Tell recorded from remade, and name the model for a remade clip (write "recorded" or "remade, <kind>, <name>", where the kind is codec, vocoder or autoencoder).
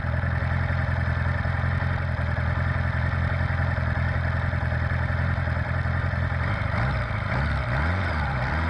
remade, vocoder, BigVGAN v2